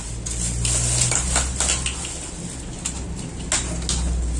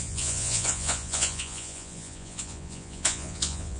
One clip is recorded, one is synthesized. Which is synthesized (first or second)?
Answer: second